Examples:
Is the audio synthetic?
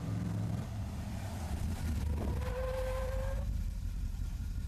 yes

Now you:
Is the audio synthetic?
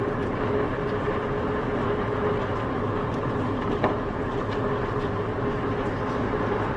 no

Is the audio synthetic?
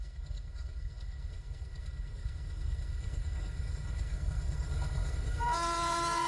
yes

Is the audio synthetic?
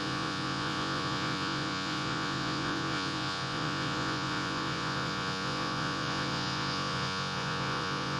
yes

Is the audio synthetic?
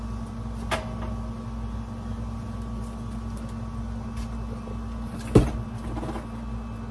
no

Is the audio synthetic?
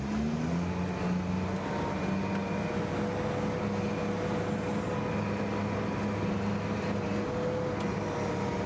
no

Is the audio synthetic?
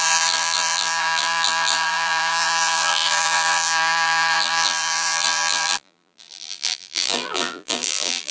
yes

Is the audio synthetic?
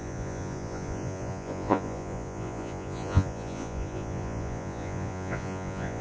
yes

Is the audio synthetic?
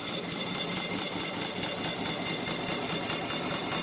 no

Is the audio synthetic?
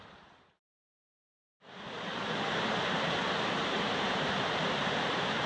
yes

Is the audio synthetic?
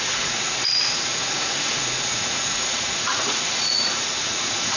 yes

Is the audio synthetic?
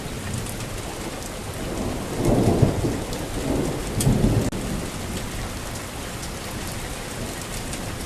no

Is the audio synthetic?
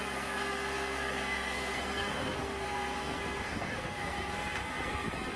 yes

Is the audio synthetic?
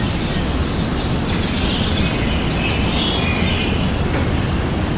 no